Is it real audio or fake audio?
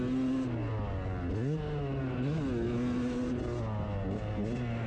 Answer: real